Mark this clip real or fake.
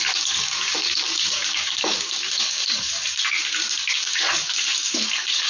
fake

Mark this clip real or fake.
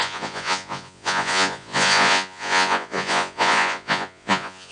fake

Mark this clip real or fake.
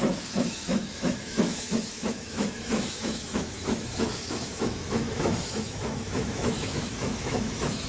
fake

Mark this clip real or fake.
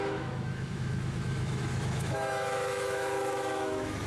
fake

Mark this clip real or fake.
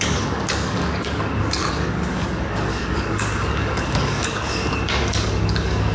fake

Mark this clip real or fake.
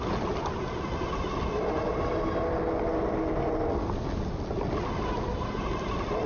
real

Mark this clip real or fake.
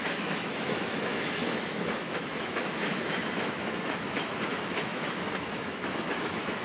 fake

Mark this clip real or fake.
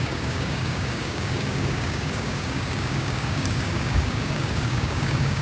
fake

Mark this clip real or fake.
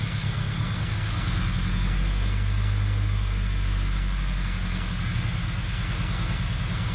fake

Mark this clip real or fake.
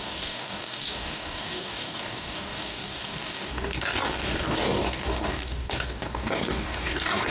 fake